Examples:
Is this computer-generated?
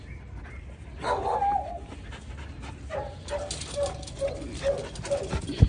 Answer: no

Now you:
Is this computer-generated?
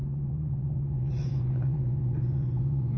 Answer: yes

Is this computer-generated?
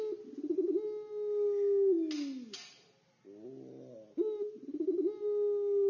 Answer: no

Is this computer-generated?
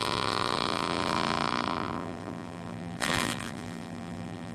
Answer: yes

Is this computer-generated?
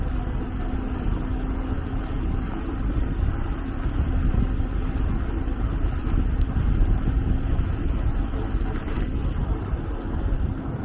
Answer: no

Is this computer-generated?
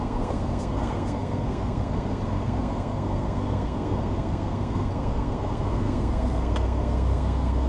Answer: yes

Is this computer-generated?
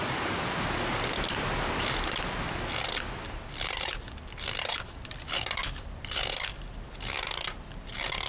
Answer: no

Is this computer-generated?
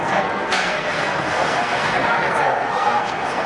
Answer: yes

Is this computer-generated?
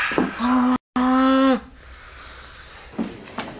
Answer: no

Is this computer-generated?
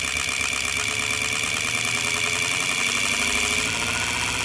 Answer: no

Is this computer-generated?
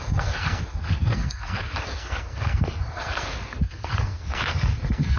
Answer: yes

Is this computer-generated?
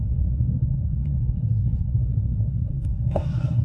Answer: yes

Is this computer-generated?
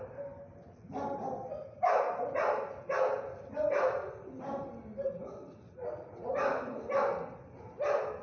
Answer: no